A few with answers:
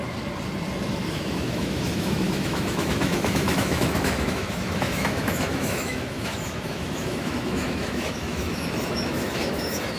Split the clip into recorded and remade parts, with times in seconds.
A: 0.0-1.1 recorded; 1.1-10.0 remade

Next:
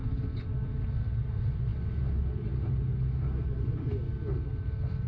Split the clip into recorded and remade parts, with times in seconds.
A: 0.0-5.1 recorded

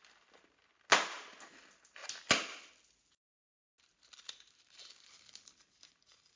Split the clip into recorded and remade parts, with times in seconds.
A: 0.0-6.4 recorded

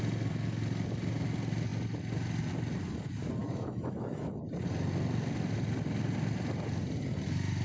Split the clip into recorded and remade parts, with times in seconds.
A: 0.0-3.4 recorded; 3.4-4.3 remade; 4.3-7.6 recorded

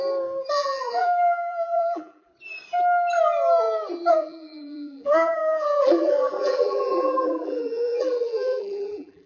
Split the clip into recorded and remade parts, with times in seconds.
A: 0.0-0.5 recorded; 0.5-2.3 remade; 2.3-4.1 recorded; 4.1-9.3 remade

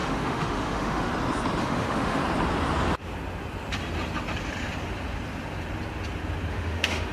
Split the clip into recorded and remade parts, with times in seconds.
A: 0.0-1.1 remade; 1.1-1.6 recorded; 1.6-2.2 remade; 2.2-6.5 recorded; 6.5-7.1 remade

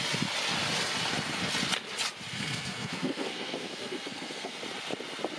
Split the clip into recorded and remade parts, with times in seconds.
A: 0.0-2.3 recorded; 2.3-4.6 remade; 4.6-5.4 recorded